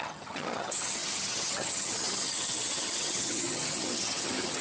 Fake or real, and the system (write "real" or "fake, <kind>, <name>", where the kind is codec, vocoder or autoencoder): fake, vocoder, HiFi-GAN